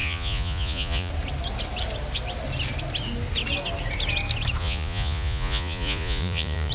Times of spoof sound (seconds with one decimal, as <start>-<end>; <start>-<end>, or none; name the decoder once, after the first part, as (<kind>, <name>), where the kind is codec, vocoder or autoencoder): 0.0-1.1 (vocoder, Vocos); 4.6-6.7